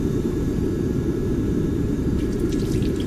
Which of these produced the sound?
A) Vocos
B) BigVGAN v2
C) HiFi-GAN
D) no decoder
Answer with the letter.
B